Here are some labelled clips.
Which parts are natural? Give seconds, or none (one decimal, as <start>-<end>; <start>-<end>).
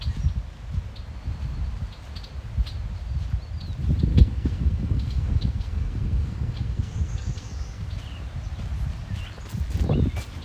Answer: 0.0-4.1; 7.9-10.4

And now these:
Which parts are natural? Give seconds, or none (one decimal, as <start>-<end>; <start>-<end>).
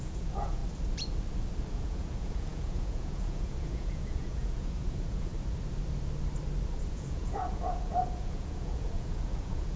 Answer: 0.6-1.7; 5.3-6.9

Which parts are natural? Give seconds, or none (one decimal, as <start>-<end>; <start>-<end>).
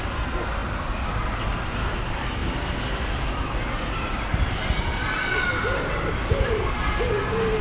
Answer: 0.0-7.6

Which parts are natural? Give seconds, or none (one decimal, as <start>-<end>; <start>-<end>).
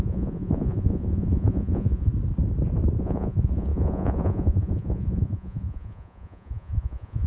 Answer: 2.1-3.0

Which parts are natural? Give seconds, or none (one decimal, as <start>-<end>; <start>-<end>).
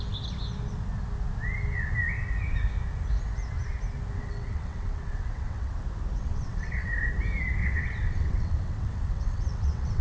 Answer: 0.0-4.2; 5.7-6.2; 6.9-7.6